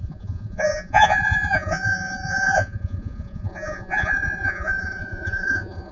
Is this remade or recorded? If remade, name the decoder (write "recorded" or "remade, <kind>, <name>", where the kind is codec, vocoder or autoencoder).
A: remade, vocoder, Vocos